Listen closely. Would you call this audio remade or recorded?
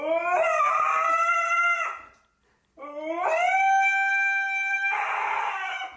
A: recorded